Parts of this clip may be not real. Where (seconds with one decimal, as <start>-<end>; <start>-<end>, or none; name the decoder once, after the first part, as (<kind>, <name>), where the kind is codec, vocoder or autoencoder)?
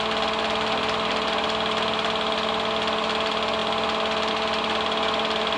none